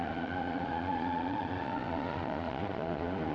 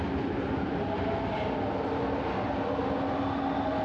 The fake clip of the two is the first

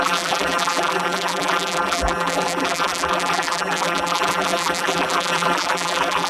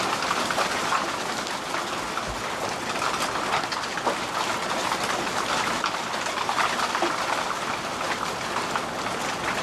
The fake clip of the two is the first